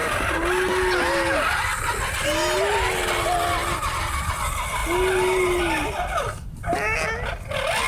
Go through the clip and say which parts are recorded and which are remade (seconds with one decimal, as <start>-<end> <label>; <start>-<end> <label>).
0.0-3.6 recorded; 3.6-4.3 remade; 4.3-7.9 recorded